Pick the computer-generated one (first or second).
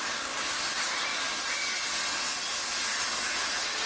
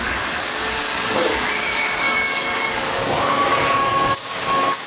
second